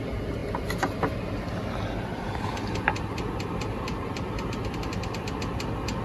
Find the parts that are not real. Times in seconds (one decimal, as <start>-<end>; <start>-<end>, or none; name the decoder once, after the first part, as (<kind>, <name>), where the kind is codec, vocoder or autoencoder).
none